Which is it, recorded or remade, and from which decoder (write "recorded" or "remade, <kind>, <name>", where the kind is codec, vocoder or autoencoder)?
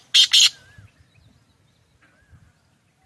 recorded